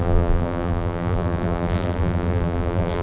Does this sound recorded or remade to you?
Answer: remade